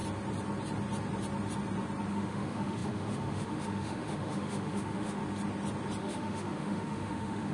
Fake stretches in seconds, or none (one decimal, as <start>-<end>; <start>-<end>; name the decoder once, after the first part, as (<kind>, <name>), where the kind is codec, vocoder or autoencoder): 2.1-5.2 (autoencoder, DAC-VAE); 6.0-7.5